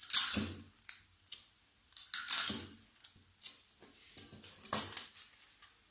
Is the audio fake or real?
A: real